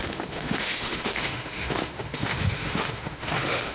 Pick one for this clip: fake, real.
fake